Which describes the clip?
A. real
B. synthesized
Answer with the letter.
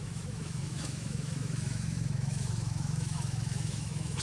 B